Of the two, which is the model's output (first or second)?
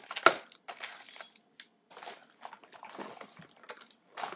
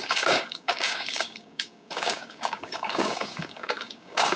second